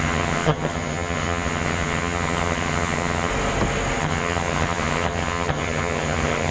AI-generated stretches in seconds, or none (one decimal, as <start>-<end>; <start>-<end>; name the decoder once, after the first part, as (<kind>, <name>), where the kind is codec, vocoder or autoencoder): 0.0-3.3 (vocoder, HiFi-GAN); 4.0-6.5